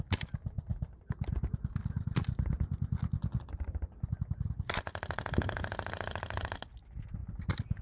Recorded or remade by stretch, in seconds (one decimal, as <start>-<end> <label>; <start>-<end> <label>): 0.0-7.8 recorded